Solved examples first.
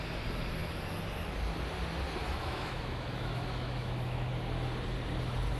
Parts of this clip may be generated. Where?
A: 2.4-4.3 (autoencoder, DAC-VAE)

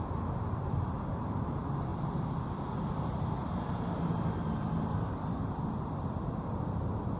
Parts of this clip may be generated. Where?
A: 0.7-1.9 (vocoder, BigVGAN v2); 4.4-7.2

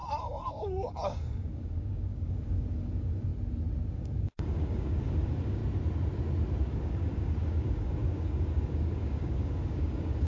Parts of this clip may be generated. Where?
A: 0.5-3.3 (codec, DAC); 3.9-5.6; 6.6-10.3